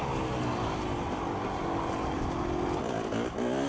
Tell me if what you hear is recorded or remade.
recorded